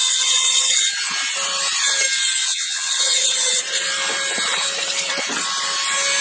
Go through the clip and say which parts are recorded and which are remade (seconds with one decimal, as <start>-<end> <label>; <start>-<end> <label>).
0.0-0.8 remade; 0.8-2.4 recorded; 2.4-3.7 remade; 3.7-6.2 recorded